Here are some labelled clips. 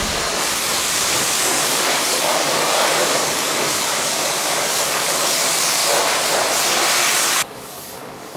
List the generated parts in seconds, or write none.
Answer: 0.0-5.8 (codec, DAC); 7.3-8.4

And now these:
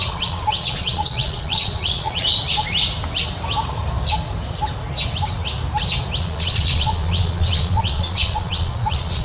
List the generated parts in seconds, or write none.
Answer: 0.0-2.4 (vocoder, Vocos); 6.2-9.2

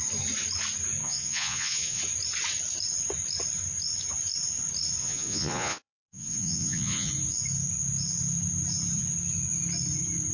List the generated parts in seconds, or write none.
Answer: 1.0-2.0 (vocoder, Vocos); 5.0-7.1

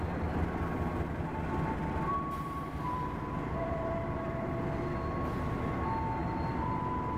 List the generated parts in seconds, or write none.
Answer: 2.1-4.5 (vocoder, BigVGAN v2); 6.2-6.8

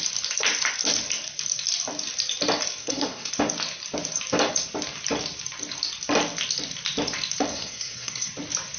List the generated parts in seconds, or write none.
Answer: 2.8-3.3 (codec, SNAC); 7.5-8.3